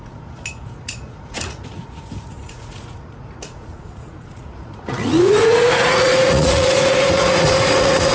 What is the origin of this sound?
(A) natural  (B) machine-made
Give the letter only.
B